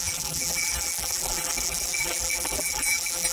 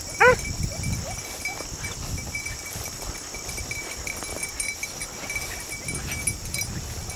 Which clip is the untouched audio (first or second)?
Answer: second